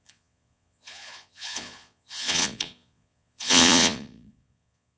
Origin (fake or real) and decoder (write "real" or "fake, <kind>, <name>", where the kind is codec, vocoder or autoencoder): fake, vocoder, Vocos